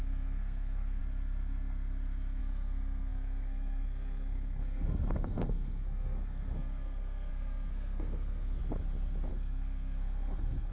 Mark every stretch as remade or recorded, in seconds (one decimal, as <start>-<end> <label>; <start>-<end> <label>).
0.0-1.0 remade; 1.0-2.4 recorded; 2.4-8.6 remade; 8.6-9.3 recorded; 9.3-10.7 remade